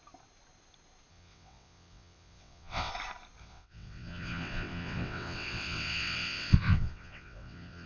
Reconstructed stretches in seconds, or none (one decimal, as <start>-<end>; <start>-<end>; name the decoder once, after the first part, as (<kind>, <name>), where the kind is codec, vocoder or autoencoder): 1.1-2.9 (vocoder, WaveNeXt); 3.4-7.9